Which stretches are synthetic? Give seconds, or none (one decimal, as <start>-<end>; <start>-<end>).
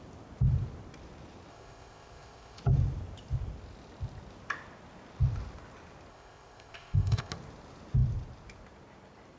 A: 1.5-2.6; 6.1-7.3